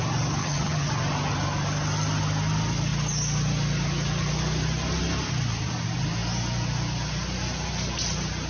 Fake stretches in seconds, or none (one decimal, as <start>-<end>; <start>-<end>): 0.4-0.9